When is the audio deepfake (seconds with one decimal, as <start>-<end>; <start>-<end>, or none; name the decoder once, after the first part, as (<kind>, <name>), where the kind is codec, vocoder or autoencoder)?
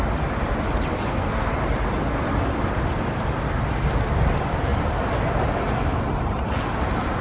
0.9-1.5 (codec, SNAC)